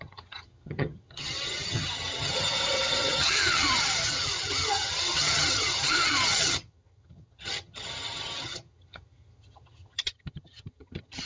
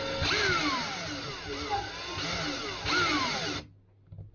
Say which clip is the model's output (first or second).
first